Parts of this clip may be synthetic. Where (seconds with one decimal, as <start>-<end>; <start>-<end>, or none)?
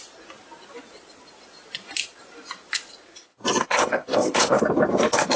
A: 3.6-4.6